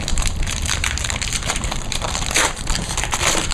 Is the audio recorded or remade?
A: remade